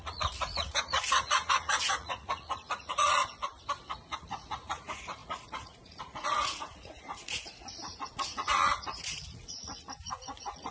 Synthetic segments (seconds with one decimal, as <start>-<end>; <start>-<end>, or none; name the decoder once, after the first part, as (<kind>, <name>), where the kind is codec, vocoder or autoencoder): 0.0-3.2 (vocoder, Vocos); 4.2-10.7